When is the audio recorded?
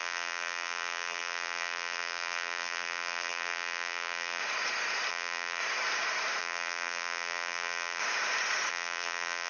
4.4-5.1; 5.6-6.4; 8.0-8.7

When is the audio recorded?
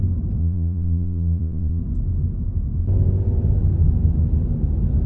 0.0-0.4; 1.8-5.1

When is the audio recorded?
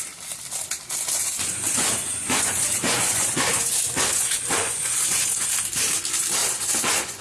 0.0-1.2; 5.5-6.4